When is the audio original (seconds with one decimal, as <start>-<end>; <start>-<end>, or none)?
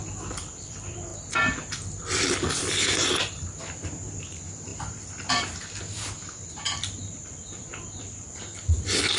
1.1-4.2; 7.7-8.2